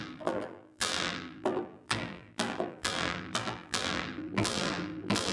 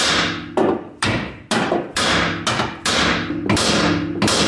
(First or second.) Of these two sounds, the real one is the second